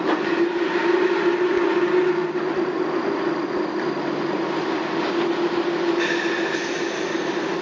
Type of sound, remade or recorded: recorded